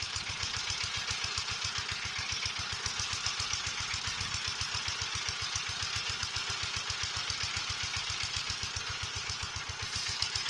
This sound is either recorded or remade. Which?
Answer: recorded